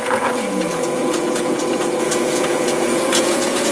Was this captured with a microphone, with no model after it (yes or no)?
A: no